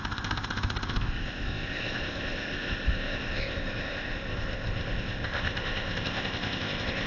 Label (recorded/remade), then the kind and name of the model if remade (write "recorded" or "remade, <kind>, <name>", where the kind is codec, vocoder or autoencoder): remade, codec, ZipCodec